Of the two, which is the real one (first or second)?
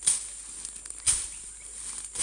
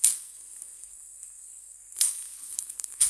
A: first